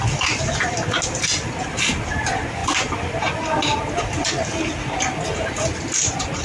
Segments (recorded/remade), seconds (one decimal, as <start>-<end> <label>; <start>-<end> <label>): 0.0-6.4 recorded